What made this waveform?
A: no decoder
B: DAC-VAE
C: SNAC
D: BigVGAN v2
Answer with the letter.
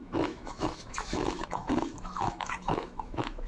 B